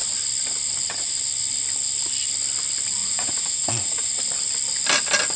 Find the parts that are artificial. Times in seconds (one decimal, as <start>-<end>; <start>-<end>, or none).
3.0-4.1